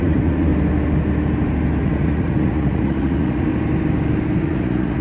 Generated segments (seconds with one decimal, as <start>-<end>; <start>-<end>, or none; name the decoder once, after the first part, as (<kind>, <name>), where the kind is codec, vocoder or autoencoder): 0.0-0.5 (vocoder, Vocos); 1.8-3.5; 4.4-5.0